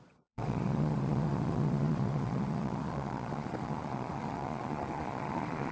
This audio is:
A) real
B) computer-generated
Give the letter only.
B